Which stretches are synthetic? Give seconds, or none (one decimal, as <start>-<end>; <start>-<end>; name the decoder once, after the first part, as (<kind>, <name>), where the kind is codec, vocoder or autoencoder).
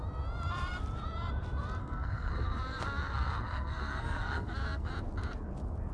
1.8-4.9 (codec, SNAC)